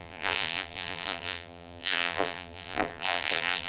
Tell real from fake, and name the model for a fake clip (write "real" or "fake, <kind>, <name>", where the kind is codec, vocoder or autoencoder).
fake, vocoder, BigVGAN v2